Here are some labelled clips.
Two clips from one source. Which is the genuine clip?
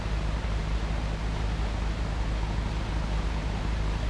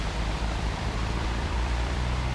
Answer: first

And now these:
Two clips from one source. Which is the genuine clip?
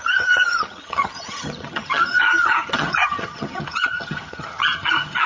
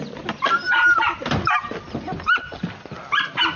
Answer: second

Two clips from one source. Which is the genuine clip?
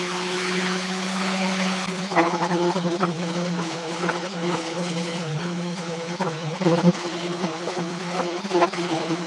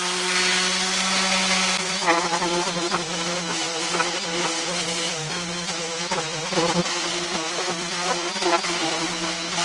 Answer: second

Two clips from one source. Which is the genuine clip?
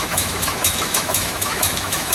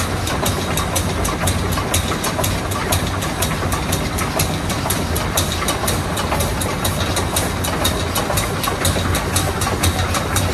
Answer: second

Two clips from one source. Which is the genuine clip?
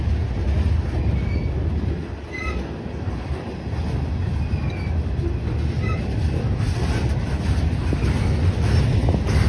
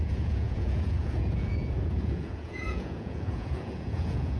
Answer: first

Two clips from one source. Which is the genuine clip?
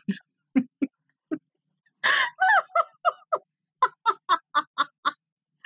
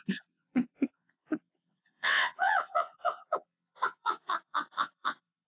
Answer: first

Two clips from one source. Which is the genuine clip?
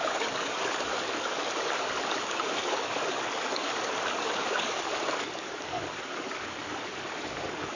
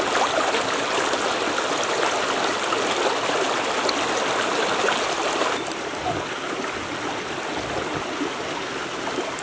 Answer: second